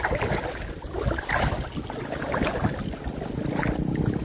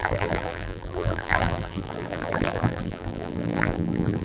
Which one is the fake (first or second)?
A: second